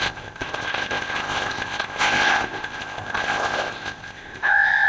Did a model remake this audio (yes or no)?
yes